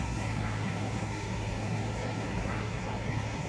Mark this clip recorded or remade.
remade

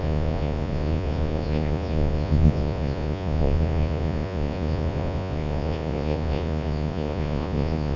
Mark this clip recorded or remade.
remade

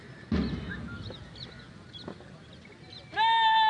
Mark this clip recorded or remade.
recorded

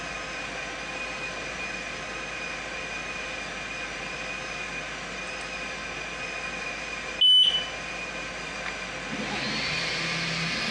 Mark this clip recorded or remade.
recorded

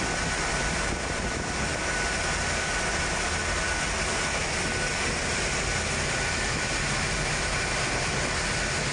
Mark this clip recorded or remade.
recorded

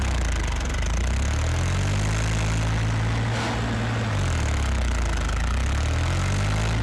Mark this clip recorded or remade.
recorded